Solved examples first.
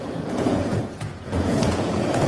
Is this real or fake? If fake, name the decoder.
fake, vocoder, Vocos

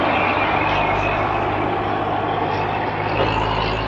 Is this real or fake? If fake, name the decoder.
real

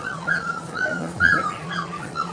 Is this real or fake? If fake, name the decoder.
fake, vocoder, Vocos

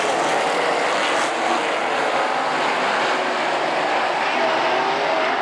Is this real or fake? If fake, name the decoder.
real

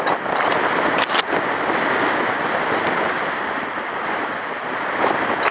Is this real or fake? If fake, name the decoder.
real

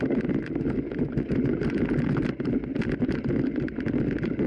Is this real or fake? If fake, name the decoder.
real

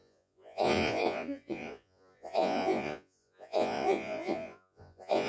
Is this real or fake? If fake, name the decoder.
fake, vocoder, Vocos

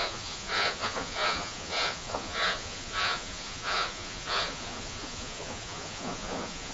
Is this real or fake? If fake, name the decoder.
fake, vocoder, Vocos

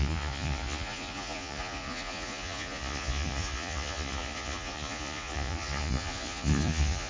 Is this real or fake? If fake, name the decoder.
fake, vocoder, Vocos